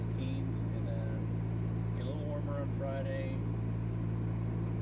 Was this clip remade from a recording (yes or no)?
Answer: no